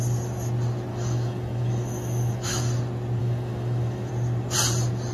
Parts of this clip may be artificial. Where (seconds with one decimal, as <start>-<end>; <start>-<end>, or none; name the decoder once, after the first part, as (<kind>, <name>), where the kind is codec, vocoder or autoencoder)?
0.9-2.6 (autoencoder, DAC-VAE); 3.2-4.1